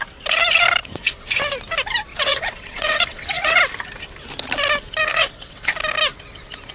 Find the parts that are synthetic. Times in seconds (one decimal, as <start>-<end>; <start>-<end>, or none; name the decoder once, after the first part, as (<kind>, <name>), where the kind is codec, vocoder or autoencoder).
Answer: 0.8-1.4 (vocoder, WaveNeXt); 2.1-3.6; 5.1-5.7